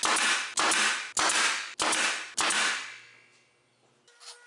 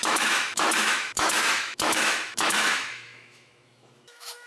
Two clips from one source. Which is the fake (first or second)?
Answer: second